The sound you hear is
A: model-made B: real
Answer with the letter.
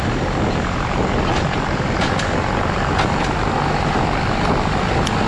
B